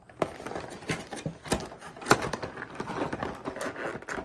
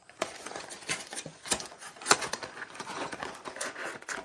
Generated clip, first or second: second